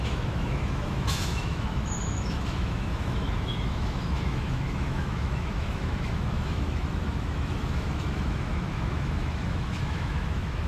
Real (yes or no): no